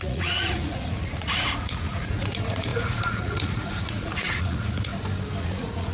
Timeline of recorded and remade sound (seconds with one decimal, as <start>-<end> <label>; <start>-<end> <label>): 0.0-4.9 remade; 4.9-5.4 recorded; 5.4-5.9 remade